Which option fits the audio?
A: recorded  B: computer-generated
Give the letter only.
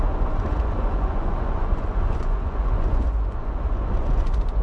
B